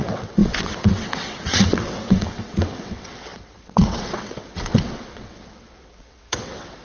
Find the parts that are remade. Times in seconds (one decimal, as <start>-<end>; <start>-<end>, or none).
0.0-6.8